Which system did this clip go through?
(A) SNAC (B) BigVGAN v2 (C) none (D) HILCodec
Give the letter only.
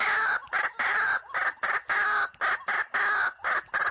C